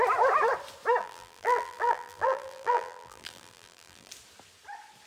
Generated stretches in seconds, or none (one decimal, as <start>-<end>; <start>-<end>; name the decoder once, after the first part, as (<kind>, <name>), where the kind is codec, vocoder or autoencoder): 1.0-4.1 (vocoder, BigVGAN v2)